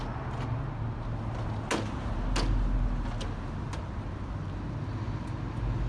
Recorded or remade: recorded